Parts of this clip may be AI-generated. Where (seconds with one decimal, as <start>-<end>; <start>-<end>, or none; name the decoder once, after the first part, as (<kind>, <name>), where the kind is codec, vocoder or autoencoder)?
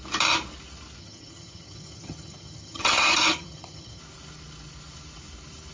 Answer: 1.0-4.0 (vocoder, HiFi-GAN)